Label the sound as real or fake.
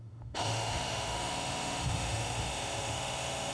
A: fake